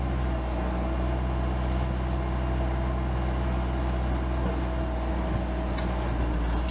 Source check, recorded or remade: recorded